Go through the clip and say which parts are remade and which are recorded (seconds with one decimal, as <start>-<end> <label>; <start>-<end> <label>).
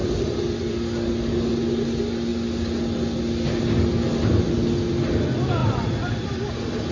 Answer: 0.0-6.9 recorded